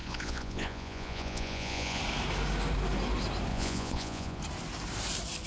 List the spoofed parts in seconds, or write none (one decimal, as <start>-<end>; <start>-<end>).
0.0-2.0; 3.5-4.4

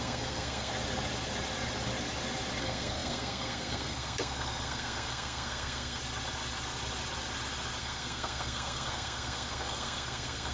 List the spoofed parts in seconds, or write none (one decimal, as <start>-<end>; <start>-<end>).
0.0-0.7; 2.6-6.0; 7.8-10.5

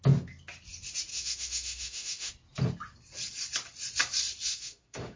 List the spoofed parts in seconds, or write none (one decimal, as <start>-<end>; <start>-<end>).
1.1-2.3; 4.5-5.2

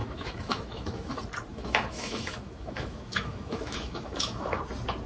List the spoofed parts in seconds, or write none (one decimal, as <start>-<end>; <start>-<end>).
0.0-1.1; 1.5-4.6